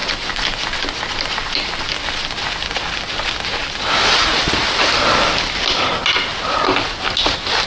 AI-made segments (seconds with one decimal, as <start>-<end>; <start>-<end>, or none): none